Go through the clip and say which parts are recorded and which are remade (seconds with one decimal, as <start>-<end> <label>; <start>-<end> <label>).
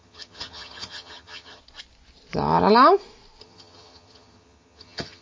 0.0-1.6 remade; 1.6-3.4 recorded; 3.4-5.2 remade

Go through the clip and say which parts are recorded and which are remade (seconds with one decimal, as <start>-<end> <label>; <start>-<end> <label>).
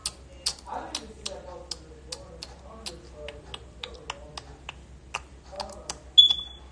0.0-6.7 recorded